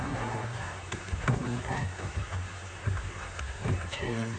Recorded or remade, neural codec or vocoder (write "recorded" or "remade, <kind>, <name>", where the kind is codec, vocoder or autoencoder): remade, codec, SNAC